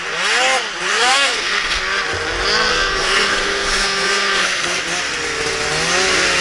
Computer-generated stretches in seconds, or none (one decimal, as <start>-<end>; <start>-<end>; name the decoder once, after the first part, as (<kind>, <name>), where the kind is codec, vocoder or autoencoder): 0.9-1.8 (codec, SNAC); 2.7-4.8